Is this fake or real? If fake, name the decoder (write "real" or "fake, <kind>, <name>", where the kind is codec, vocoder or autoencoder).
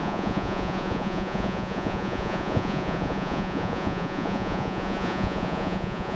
fake, vocoder, Vocos